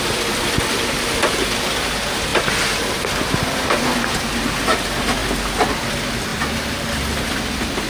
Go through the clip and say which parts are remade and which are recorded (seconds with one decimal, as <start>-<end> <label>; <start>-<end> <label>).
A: 0.0-7.9 recorded